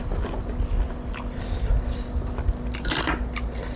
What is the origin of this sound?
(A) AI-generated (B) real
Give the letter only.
B